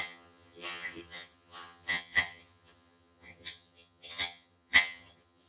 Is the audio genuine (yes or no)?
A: no